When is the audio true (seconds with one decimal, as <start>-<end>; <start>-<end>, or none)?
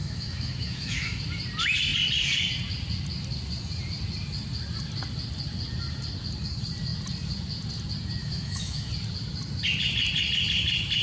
1.2-8.2; 8.9-11.0